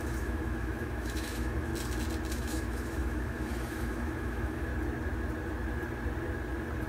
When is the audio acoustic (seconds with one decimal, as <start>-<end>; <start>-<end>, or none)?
1.7-2.3; 4.7-6.9